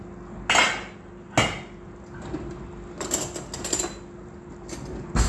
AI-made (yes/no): no